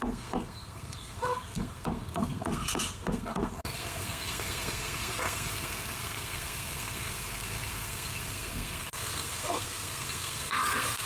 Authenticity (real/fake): fake